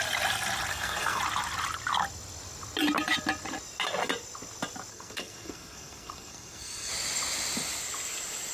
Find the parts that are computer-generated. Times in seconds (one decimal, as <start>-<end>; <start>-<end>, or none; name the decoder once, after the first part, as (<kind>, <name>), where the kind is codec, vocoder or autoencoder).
0.7-1.2 (codec, SNAC); 4.9-6.9